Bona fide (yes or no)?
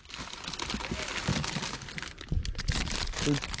yes